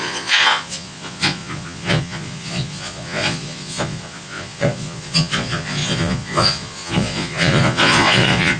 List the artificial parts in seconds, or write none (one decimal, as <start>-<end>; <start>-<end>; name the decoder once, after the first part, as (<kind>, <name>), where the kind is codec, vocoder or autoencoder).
0.0-8.6 (vocoder, Vocos)